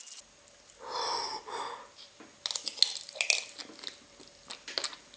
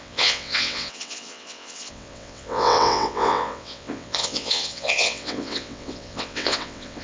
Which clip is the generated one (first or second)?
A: second